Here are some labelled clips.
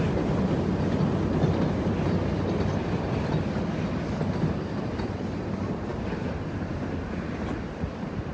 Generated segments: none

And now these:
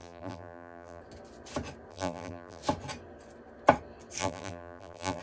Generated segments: 0.0-1.0 (vocoder, BigVGAN v2); 1.9-2.6; 4.2-5.2

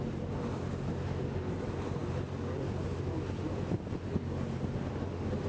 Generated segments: none